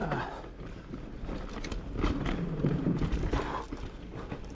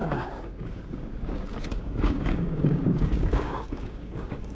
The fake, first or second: second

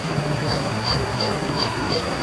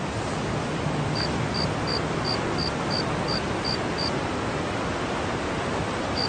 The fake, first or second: first